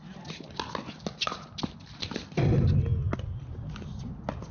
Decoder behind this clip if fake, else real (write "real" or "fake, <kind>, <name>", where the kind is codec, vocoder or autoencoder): real